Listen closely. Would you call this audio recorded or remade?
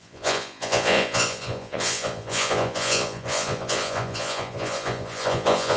remade